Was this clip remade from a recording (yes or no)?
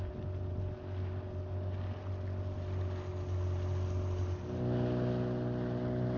no